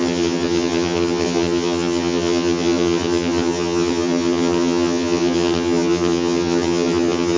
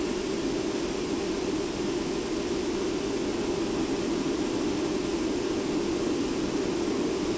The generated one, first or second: first